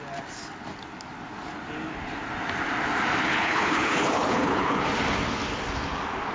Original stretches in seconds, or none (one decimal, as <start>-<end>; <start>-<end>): 0.0-3.3; 4.8-6.3